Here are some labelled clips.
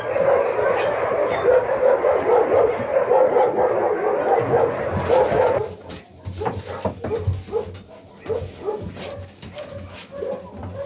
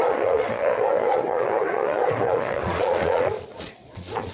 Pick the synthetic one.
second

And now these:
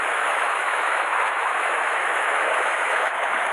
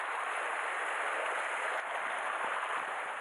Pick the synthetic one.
first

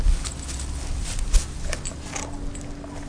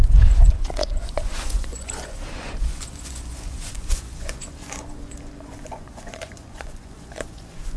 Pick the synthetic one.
second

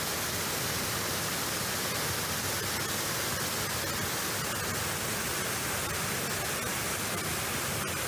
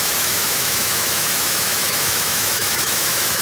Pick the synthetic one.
second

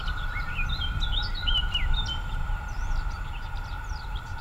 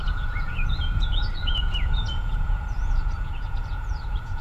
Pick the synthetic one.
second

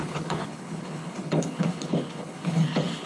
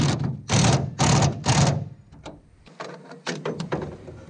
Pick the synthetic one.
first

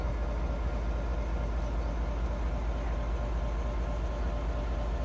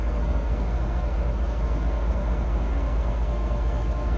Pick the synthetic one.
second